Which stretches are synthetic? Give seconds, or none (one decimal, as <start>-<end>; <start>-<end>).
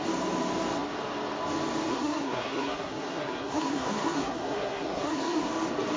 1.9-5.5